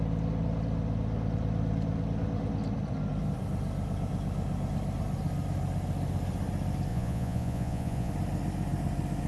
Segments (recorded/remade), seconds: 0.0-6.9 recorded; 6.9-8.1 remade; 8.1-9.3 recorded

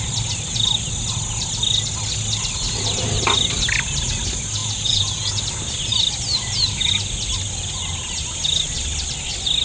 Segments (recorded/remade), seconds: 0.0-4.6 recorded; 4.6-5.4 remade; 5.4-9.6 recorded

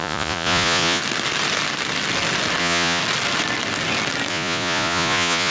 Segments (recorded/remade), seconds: 0.0-1.0 remade; 1.0-2.6 recorded; 2.6-3.0 remade; 3.0-4.3 recorded; 4.3-5.5 remade

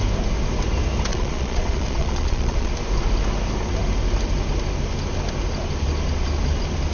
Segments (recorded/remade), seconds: 0.0-1.1 recorded; 1.1-2.7 remade; 2.7-6.9 recorded

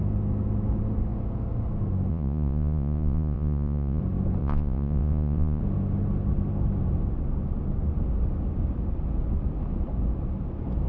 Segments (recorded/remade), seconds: 0.0-2.1 recorded; 2.1-4.0 remade; 4.0-4.4 recorded; 4.4-5.6 remade; 5.6-10.9 recorded

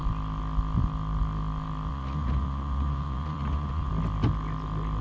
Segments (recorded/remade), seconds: 0.0-1.9 recorded; 1.9-3.9 remade; 3.9-5.0 recorded

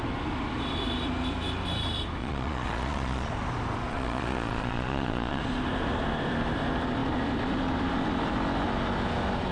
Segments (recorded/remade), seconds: 0.0-2.2 recorded; 2.2-3.3 remade; 3.3-3.9 recorded; 3.9-5.4 remade; 5.4-9.5 recorded